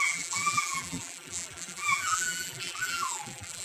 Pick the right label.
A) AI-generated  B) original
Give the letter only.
A